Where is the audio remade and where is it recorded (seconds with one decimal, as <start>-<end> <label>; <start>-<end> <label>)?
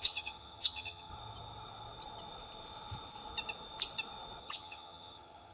0.0-1.1 remade; 1.1-4.4 recorded; 4.4-5.5 remade